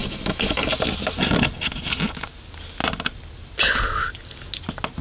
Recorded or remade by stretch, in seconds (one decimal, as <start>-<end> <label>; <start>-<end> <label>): 0.0-0.7 remade; 0.7-5.0 recorded